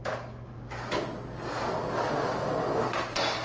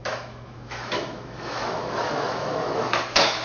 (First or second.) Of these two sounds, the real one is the first